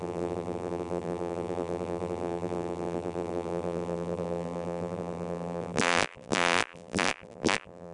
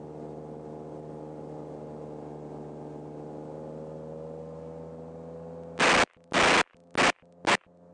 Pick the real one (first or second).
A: second